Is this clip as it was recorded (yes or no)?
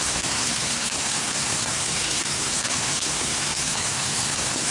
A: no